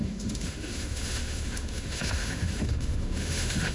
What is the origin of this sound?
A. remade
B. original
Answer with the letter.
A